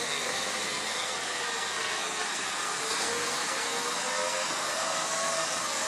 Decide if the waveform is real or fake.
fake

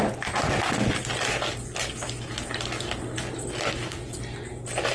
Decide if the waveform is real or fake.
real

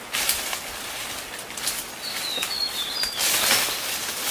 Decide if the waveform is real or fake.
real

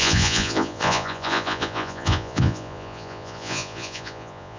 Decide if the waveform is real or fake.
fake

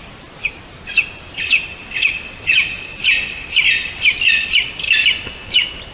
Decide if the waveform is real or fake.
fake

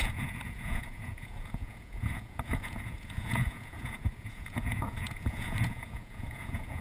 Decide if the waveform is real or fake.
fake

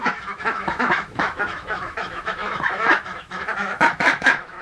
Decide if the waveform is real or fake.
fake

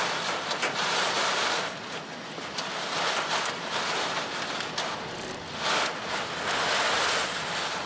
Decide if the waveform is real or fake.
real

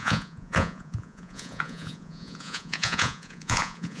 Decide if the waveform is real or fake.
fake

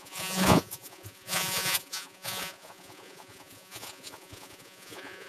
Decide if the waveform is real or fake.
fake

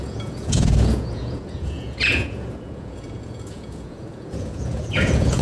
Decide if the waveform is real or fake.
fake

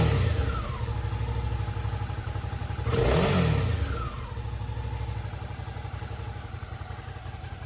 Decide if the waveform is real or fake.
real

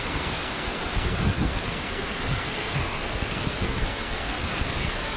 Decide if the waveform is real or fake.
fake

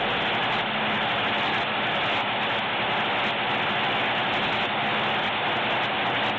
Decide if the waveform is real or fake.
real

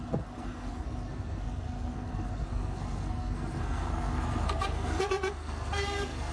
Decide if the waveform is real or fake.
fake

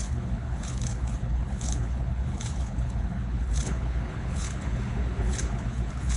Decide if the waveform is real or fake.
fake